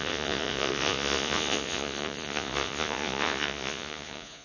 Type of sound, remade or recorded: remade